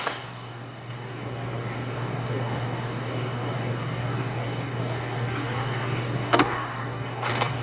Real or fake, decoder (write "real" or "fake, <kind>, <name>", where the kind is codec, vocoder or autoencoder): fake, codec, DAC